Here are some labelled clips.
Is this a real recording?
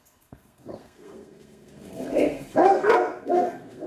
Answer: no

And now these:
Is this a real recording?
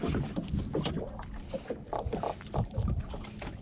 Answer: yes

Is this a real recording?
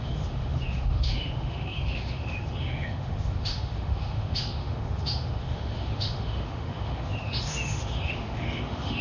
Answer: no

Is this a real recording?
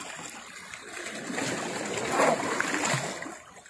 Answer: yes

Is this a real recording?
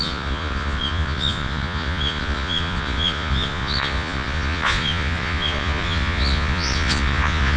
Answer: no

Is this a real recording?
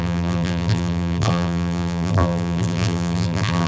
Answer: no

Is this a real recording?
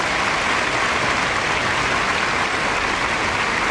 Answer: yes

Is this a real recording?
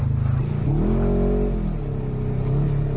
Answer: yes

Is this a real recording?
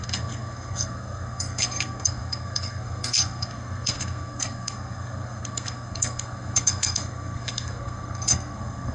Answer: no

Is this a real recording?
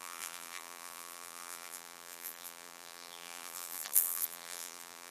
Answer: no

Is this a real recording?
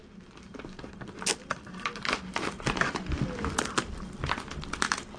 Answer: yes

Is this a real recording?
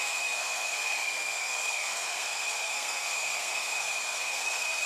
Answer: no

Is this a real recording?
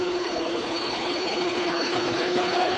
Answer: no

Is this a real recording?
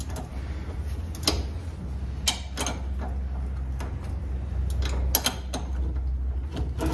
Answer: yes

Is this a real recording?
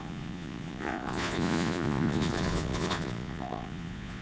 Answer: no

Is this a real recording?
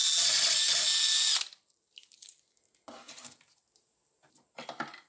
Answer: yes